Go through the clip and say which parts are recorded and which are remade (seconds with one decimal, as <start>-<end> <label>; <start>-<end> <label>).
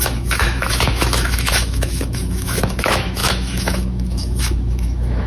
0.0-5.3 remade